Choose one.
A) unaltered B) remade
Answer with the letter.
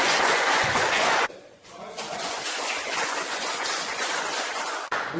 B